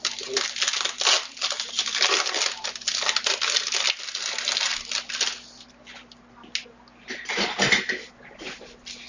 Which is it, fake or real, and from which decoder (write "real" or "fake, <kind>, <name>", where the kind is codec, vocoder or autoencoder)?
real